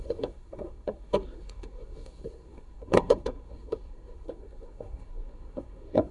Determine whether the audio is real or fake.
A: fake